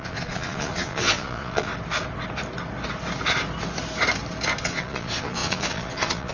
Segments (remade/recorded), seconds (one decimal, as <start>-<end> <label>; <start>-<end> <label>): 0.0-1.7 remade; 1.7-4.6 recorded; 4.6-6.3 remade